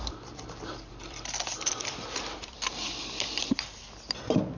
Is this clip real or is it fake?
fake